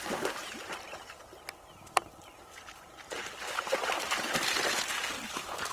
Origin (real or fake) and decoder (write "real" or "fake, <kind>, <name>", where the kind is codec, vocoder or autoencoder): real